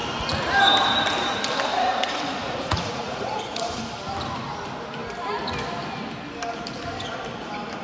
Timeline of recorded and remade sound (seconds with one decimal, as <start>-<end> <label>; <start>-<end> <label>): 0.0-1.7 recorded; 1.7-3.8 remade; 3.8-7.8 recorded